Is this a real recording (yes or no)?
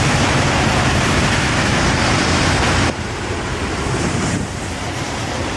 no